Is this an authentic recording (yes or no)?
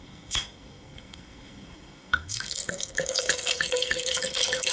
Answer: no